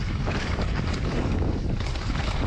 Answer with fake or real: fake